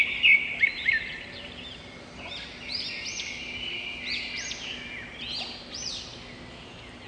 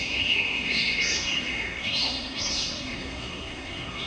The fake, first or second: second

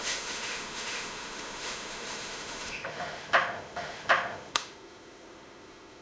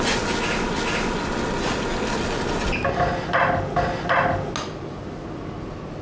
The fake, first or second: first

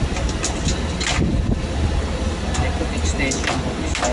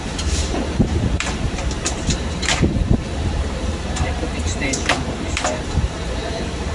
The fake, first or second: second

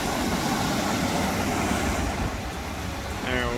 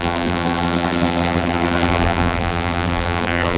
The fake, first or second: second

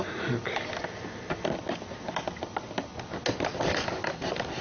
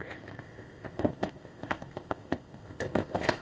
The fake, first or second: second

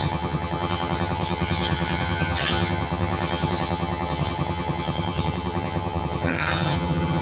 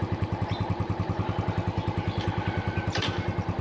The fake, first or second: first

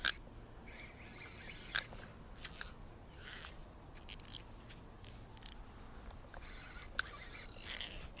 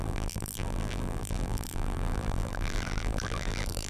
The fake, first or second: second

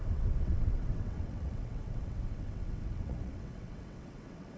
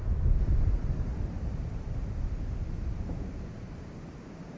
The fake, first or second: first